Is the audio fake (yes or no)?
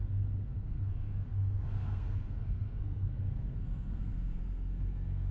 yes